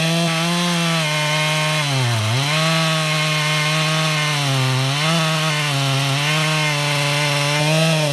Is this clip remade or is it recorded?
recorded